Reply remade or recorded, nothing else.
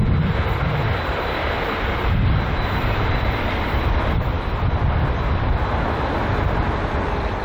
recorded